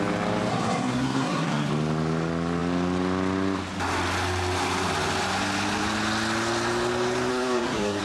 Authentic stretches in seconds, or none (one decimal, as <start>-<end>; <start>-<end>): 0.0-0.5; 1.7-7.3